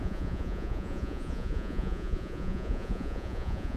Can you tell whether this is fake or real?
fake